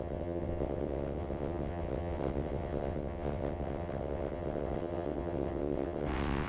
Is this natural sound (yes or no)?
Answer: no